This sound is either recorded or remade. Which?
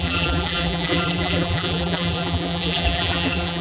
remade